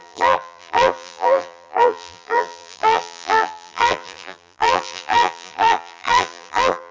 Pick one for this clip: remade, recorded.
remade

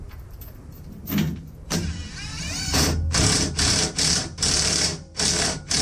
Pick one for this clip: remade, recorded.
remade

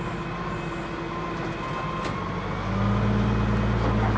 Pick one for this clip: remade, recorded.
recorded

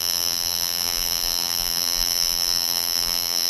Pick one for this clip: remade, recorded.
remade